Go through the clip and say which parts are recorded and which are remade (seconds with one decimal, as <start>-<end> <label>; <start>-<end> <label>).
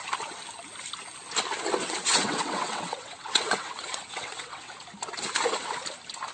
0.0-1.8 recorded; 1.8-4.7 remade; 4.7-6.3 recorded